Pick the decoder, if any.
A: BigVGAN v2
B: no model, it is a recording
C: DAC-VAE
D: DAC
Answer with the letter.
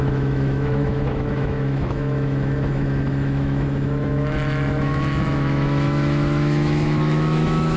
C